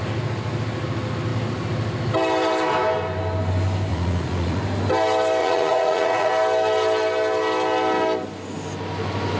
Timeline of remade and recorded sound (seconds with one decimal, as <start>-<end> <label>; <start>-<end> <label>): 0.0-3.9 recorded; 3.9-4.6 remade; 4.6-5.4 recorded; 5.4-6.3 remade; 6.3-9.4 recorded